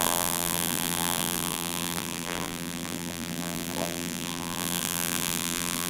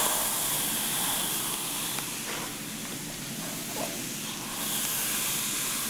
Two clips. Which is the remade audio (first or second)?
first